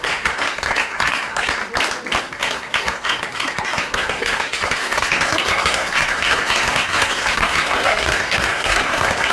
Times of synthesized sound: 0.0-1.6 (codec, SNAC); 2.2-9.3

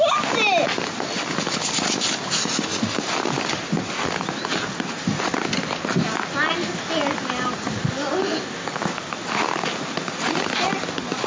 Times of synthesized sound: 8.6-9.1 (codec, DAC)